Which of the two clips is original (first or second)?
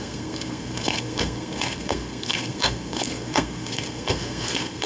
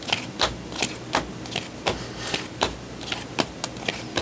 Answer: second